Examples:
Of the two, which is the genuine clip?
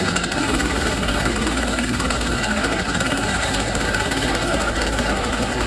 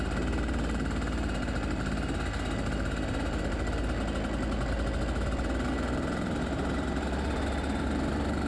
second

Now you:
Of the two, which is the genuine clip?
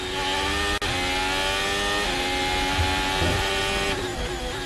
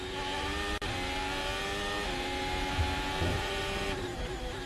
first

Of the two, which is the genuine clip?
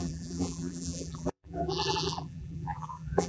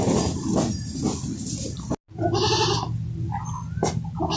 second